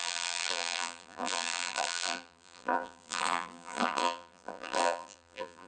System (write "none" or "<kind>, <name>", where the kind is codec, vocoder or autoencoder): vocoder, BigVGAN v2